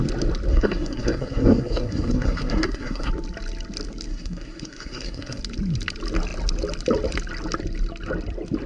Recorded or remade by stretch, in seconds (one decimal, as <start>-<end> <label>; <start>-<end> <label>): 0.0-0.5 recorded; 0.5-3.1 remade; 3.1-4.1 recorded; 4.1-5.4 remade; 5.4-8.7 recorded